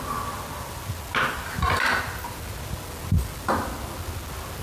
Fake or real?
real